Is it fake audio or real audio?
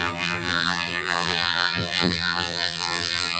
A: fake